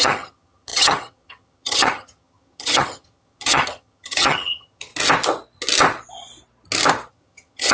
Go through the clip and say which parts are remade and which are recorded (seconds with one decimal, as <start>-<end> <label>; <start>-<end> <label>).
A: 0.0-4.9 remade; 4.9-7.1 recorded; 7.1-7.7 remade